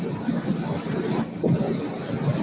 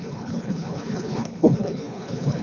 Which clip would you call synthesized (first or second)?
second